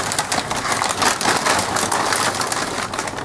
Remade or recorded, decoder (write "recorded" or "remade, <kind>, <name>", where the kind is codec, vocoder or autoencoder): recorded